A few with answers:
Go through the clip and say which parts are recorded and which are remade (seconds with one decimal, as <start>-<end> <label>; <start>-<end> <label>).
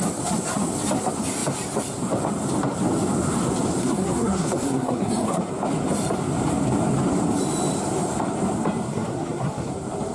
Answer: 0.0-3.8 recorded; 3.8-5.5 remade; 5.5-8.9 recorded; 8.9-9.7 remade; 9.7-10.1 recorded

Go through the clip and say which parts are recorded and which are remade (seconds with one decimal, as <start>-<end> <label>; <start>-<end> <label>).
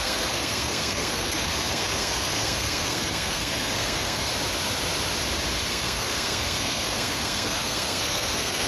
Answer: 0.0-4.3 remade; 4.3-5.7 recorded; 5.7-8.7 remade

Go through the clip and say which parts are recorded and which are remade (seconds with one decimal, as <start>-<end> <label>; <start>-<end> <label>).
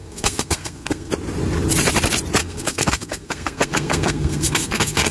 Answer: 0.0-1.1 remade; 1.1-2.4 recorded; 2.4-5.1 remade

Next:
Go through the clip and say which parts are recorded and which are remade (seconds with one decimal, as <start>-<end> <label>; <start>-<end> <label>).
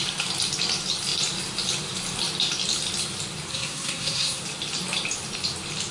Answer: 0.0-3.5 recorded; 3.5-4.4 remade; 4.4-5.9 recorded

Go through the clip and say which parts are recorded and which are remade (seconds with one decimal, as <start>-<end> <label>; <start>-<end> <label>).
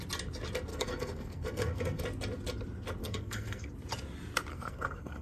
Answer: 0.0-0.7 recorded; 0.7-2.0 remade; 2.0-3.0 recorded; 3.0-3.7 remade; 3.7-4.5 recorded; 4.5-5.2 remade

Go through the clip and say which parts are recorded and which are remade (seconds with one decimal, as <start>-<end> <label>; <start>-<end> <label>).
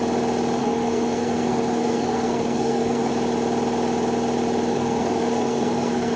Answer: 0.0-0.6 recorded; 0.6-3.1 remade; 3.1-4.7 recorded; 4.7-6.2 remade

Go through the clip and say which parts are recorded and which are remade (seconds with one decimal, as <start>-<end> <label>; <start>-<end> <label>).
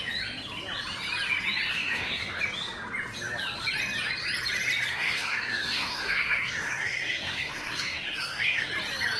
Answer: 0.0-1.7 recorded; 1.7-2.4 remade; 2.4-4.9 recorded; 4.9-8.7 remade; 8.7-9.2 recorded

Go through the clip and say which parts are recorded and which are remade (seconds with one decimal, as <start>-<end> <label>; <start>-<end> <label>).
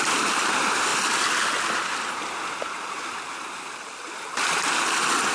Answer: 0.0-5.3 recorded